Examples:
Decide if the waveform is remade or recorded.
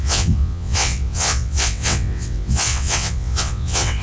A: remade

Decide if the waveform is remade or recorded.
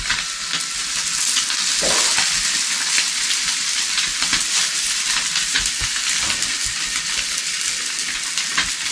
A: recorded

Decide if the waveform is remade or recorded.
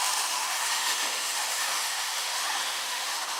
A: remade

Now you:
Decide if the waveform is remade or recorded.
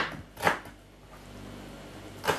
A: recorded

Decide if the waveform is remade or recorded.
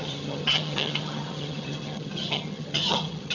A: remade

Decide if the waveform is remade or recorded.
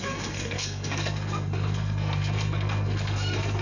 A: remade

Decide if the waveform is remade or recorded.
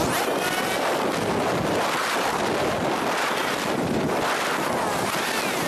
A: recorded